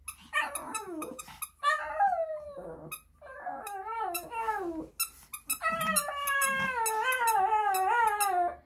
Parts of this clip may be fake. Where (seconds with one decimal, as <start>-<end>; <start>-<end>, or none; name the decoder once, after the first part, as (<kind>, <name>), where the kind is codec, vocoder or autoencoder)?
0.7-1.2 (autoencoder, DAC-VAE); 3.5-4.6